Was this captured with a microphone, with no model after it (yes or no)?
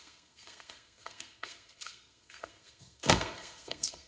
no